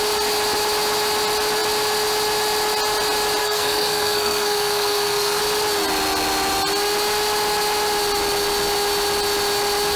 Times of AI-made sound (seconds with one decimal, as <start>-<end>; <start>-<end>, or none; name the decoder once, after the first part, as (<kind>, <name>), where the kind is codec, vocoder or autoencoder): 3.4-5.4 (codec, SNAC)